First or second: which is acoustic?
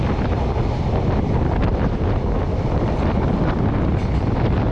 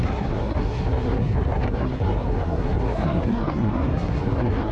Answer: first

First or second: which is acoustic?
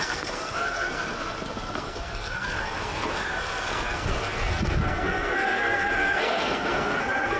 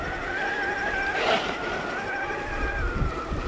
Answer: second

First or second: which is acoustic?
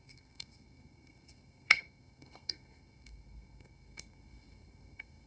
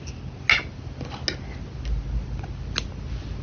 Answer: second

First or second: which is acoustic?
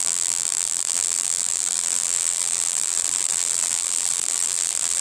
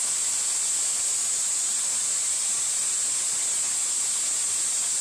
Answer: second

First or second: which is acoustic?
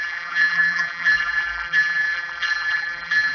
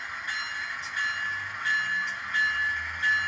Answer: second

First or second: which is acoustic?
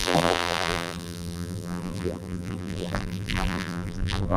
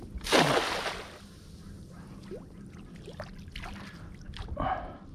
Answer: second